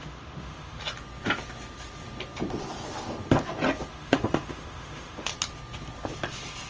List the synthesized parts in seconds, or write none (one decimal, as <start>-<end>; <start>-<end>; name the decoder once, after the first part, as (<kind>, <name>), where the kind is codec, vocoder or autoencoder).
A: 0.0-0.8 (autoencoder, DAC-VAE); 3.9-5.3